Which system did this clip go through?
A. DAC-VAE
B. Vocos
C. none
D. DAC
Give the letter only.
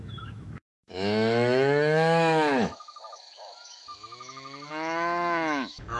A